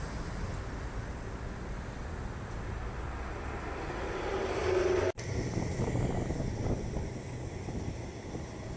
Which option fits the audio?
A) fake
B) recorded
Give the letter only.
B